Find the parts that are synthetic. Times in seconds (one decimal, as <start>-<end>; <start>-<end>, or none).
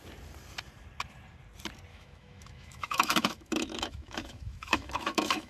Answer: 1.9-5.5